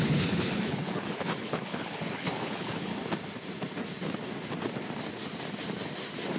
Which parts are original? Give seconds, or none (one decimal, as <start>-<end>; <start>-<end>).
2.9-6.4